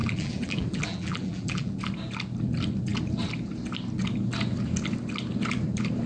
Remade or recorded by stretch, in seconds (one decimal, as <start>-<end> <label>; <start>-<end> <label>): 0.0-1.8 remade; 1.8-6.1 recorded